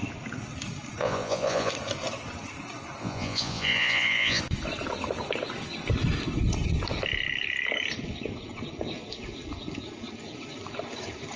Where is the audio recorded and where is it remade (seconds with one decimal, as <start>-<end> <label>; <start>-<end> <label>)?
0.0-1.0 recorded; 1.0-1.7 remade; 1.7-3.0 recorded; 3.0-4.4 remade; 4.4-11.4 recorded